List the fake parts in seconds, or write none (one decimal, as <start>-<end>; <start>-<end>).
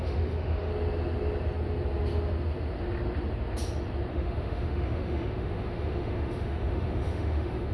0.0-0.7; 4.1-7.7